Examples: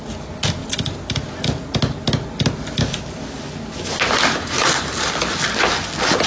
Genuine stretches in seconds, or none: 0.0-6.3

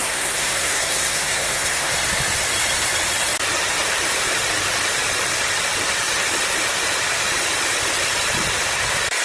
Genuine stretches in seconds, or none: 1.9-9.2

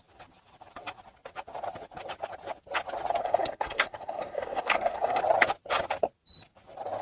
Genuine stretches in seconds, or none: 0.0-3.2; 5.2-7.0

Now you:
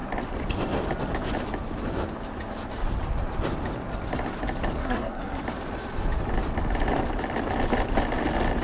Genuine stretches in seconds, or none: 0.0-4.8; 5.4-8.6